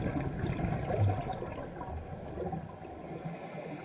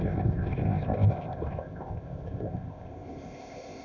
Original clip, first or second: first